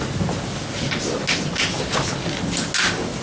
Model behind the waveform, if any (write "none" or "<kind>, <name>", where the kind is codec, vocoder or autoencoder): none